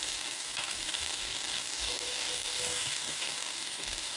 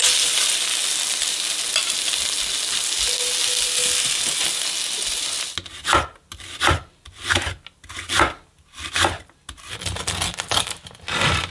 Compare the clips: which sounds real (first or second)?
second